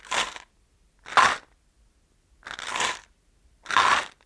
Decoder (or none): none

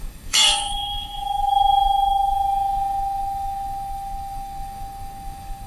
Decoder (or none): codec, DAC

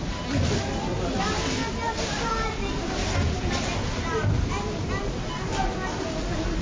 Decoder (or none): none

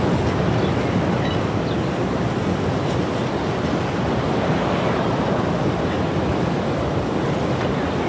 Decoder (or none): none